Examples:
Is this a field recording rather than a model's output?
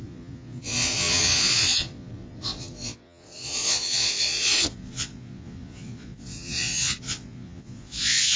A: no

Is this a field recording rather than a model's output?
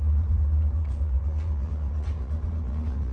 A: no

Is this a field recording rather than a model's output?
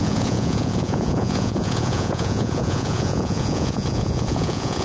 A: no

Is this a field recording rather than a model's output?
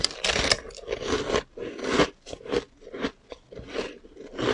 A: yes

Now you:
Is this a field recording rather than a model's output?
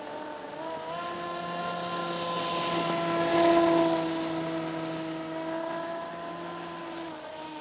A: yes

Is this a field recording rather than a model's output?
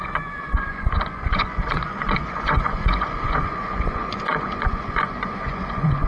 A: no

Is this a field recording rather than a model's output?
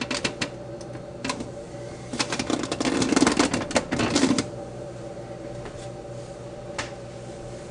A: yes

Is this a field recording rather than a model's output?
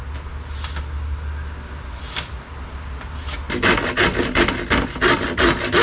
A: yes